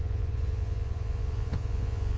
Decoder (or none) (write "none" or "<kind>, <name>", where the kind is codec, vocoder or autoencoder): vocoder, Vocos